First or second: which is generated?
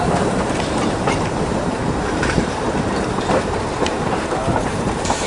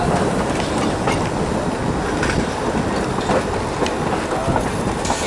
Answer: first